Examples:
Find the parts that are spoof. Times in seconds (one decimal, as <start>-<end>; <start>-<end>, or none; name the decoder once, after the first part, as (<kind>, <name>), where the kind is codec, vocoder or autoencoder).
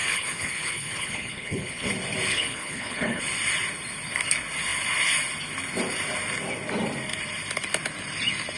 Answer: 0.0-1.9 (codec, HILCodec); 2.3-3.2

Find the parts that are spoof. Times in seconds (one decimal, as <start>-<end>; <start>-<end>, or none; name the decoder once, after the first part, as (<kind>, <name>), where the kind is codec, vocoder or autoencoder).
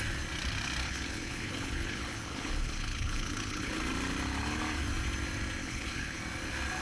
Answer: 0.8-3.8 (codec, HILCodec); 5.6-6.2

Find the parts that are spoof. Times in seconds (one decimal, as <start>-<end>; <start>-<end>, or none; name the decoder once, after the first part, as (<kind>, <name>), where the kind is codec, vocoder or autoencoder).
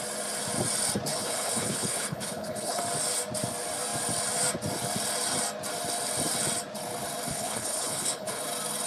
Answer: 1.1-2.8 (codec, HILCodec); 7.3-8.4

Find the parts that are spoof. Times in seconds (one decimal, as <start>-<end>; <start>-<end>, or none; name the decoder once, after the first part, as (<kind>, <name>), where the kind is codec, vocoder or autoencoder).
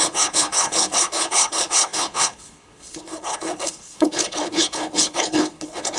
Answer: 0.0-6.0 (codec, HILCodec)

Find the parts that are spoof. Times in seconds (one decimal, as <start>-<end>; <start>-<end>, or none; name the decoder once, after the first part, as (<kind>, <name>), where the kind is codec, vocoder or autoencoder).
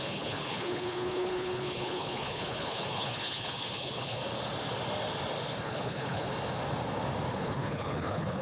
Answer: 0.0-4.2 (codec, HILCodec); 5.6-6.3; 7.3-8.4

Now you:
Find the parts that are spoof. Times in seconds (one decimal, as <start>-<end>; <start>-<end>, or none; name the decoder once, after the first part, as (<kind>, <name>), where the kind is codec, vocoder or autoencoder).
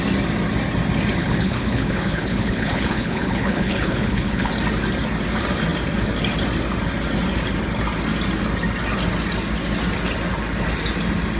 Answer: 1.2-4.5 (codec, HILCodec)